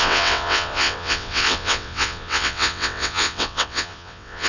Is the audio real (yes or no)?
no